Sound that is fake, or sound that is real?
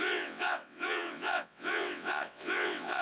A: fake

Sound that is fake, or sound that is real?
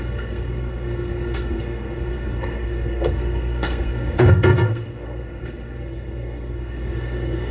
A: fake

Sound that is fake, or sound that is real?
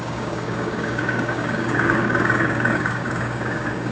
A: fake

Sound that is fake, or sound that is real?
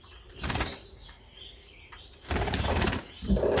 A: real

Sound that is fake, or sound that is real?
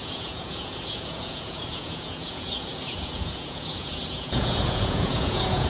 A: fake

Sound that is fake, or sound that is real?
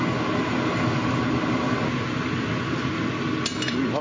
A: real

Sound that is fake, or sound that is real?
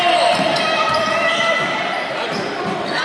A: real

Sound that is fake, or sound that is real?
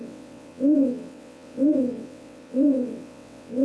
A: fake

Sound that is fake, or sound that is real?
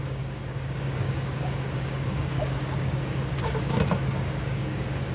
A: fake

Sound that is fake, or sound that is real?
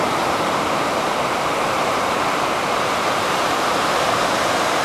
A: fake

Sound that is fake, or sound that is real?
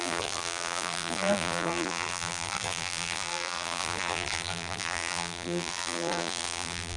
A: fake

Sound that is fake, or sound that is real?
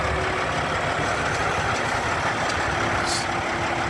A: real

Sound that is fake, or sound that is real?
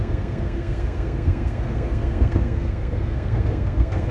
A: fake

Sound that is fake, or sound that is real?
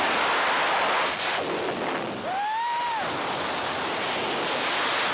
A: real